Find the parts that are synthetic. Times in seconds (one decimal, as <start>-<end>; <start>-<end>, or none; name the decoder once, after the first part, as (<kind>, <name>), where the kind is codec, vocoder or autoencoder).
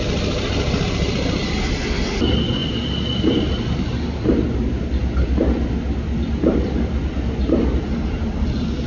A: none